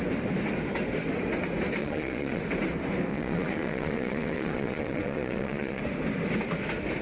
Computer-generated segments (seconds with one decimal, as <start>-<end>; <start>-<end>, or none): 1.8-2.4; 3.1-5.8